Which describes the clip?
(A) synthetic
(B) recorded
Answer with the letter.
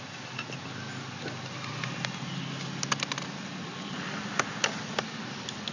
B